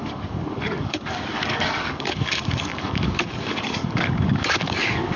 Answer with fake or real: fake